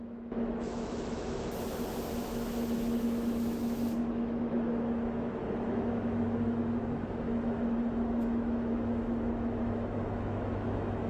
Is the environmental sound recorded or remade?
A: remade